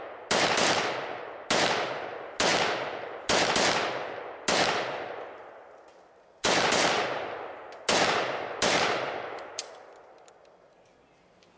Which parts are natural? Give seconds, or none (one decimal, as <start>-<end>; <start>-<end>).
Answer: 0.0-11.6

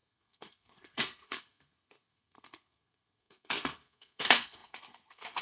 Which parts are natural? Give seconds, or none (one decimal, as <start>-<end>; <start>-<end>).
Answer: none

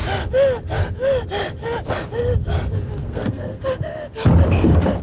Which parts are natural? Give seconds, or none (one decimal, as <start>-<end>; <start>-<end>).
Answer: 0.0-3.0; 3.6-5.0

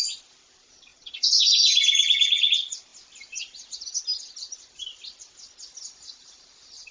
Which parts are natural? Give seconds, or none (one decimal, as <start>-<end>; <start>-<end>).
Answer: 0.0-6.9

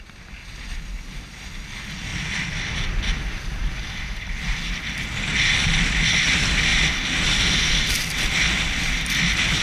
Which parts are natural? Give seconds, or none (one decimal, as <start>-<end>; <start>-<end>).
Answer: 0.0-9.6